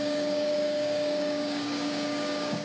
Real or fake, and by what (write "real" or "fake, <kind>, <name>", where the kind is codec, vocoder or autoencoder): fake, codec, DAC